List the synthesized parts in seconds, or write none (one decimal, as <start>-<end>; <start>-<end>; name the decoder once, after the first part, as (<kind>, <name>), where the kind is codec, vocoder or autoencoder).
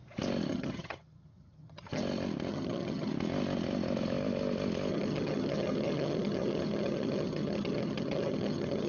0.5-2.0 (vocoder, HiFi-GAN); 2.5-3.1; 4.9-8.9